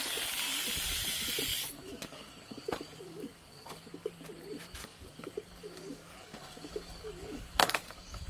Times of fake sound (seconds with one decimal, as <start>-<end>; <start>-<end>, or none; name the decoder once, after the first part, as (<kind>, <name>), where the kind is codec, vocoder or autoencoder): 1.5-4.1 (codec, DAC); 4.8-8.3

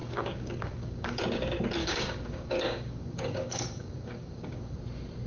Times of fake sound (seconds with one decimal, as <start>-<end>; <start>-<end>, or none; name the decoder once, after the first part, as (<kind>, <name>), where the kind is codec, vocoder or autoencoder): 0.0-1.2 (codec, DAC); 1.8-4.8

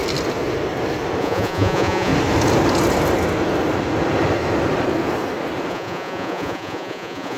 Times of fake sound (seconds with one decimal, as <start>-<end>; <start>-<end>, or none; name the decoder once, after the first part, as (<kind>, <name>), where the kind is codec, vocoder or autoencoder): 1.2-2.1 (vocoder, Vocos); 5.7-7.4

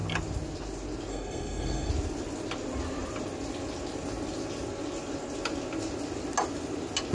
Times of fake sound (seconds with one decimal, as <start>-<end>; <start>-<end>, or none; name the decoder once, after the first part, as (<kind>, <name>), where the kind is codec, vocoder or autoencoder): 1.1-1.9 (codec, SNAC)

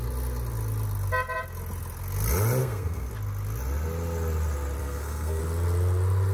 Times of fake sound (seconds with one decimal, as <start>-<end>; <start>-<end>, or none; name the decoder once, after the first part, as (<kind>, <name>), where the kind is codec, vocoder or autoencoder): 2.6-3.1 (codec, SNAC); 4.8-5.4

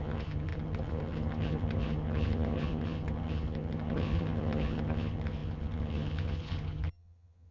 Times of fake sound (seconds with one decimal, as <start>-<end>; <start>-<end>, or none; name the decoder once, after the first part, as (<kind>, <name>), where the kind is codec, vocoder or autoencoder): 0.0-7.5 (vocoder, HiFi-GAN)